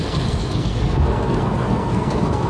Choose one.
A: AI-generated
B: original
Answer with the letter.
A